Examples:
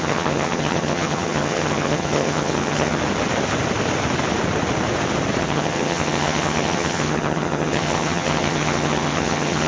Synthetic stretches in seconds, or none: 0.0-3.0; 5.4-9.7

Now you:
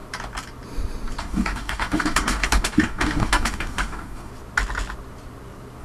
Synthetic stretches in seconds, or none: 1.2-4.3